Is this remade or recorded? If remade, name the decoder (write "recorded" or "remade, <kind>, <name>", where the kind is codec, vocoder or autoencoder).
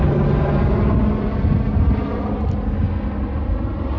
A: recorded